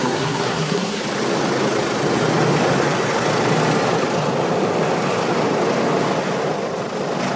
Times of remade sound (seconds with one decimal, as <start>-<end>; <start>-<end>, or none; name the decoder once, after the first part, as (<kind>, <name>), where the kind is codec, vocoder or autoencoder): 0.0-1.0 (codec, SNAC)